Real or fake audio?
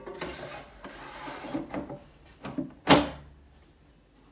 real